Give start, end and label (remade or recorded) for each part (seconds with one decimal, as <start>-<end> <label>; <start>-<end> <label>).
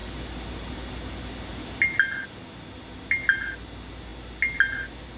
0.0-5.2 recorded